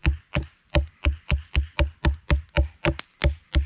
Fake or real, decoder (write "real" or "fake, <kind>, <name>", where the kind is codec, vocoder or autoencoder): real